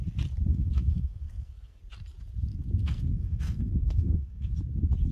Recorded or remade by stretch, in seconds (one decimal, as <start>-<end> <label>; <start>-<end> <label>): 0.0-0.5 recorded; 0.5-1.8 remade; 1.8-2.8 recorded; 2.8-4.5 remade; 4.5-5.1 recorded